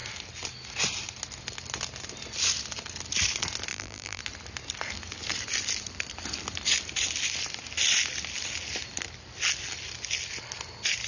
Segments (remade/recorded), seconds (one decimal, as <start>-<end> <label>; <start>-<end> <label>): 0.0-3.7 recorded; 3.7-4.2 remade; 4.2-11.1 recorded